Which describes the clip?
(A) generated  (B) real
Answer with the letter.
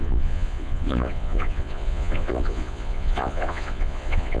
A